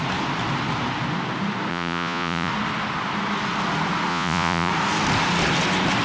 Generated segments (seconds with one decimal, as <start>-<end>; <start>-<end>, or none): 1.7-2.5; 4.1-4.7